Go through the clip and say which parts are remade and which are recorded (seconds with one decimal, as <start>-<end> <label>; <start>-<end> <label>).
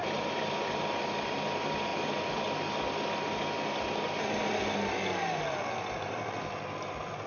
0.0-7.3 recorded